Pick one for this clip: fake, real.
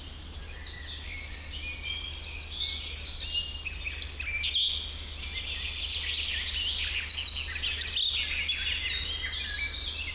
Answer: real